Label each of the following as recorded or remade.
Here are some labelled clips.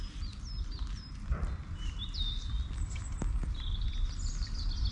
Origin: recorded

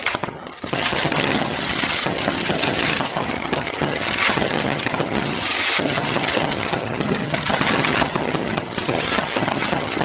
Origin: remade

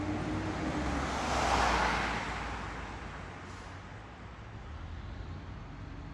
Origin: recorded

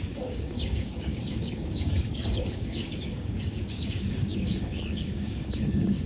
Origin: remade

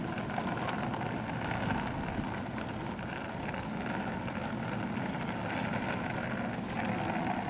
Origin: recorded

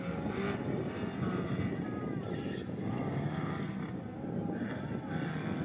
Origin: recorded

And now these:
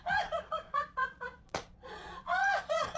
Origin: remade